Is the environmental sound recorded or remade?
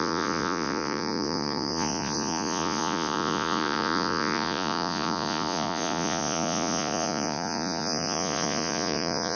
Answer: remade